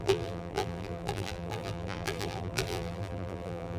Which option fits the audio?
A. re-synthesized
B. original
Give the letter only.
A